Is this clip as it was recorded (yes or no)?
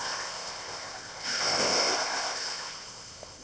no